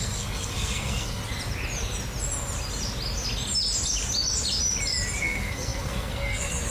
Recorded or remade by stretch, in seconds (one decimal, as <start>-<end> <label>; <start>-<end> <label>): 0.0-1.2 remade; 1.2-5.2 recorded; 5.2-6.7 remade